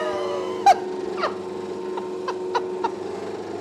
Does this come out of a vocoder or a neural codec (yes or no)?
no